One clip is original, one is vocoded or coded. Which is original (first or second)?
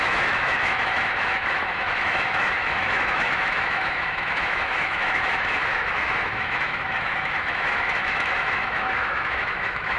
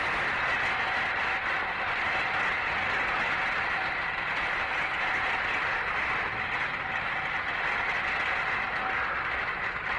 second